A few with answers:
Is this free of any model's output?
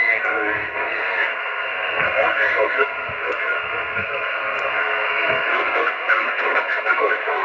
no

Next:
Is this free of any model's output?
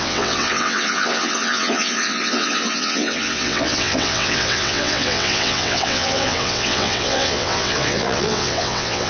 no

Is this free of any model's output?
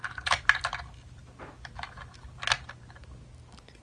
yes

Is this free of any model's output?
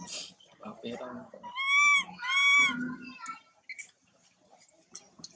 yes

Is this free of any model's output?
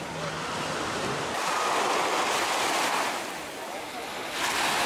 yes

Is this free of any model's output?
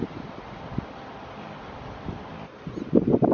yes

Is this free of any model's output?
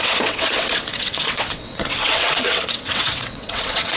no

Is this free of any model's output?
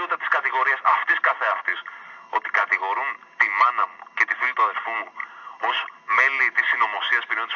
yes